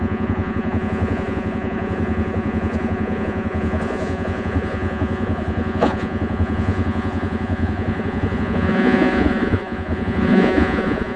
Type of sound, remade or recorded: remade